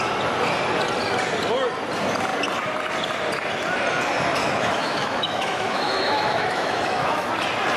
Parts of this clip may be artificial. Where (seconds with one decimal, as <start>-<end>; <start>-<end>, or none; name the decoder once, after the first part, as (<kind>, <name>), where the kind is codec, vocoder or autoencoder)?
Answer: 4.4-7.3 (autoencoder, DAC-VAE)